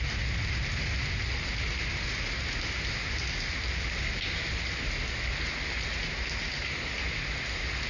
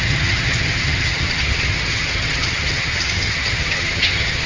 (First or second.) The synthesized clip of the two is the second